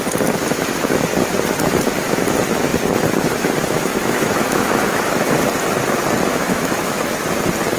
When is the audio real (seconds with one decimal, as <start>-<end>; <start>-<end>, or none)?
0.0-3.9; 5.3-6.3; 7.0-7.8